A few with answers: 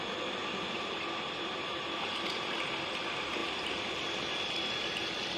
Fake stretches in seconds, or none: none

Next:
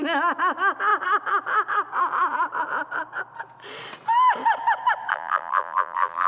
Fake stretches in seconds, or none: 5.1-6.3